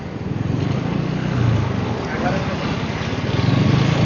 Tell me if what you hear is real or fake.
real